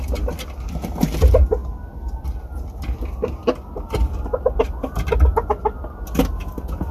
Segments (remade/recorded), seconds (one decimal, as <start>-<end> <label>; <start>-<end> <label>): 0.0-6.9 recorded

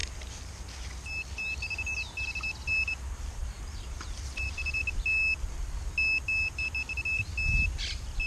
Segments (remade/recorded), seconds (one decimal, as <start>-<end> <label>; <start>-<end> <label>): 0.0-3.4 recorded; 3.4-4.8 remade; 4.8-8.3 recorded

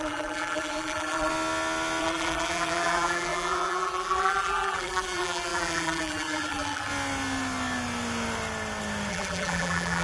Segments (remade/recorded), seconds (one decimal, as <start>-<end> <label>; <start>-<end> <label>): 0.0-1.3 remade; 1.3-2.0 recorded; 2.0-6.9 remade; 6.9-9.1 recorded; 9.1-10.0 remade